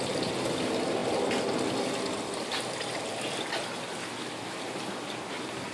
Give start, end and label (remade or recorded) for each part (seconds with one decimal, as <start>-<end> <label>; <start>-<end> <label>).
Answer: 0.0-5.7 recorded